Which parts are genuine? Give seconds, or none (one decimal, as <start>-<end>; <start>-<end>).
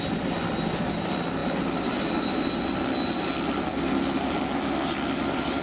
0.0-5.6